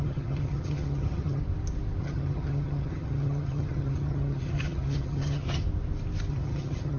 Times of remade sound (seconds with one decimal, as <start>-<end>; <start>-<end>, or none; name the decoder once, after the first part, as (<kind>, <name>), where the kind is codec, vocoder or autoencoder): 0.0-1.4 (vocoder, HiFi-GAN); 2.0-5.6; 6.3-7.0